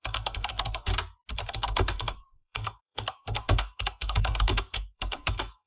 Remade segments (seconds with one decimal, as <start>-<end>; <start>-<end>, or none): 0.0-0.9; 1.5-5.7